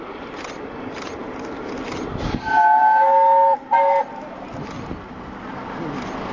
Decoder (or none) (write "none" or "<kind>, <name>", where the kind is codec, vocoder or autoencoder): none